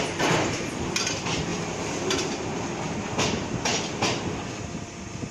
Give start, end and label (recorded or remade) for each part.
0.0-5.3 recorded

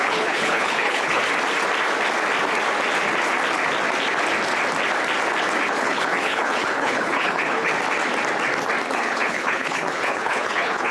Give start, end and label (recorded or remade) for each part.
0.0-1.2 remade; 1.2-5.7 recorded; 5.7-7.7 remade; 7.7-8.9 recorded; 8.9-10.9 remade

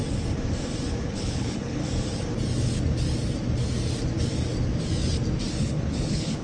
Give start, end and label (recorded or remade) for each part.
0.0-1.0 recorded; 1.0-1.8 remade; 1.8-5.6 recorded; 5.6-6.4 remade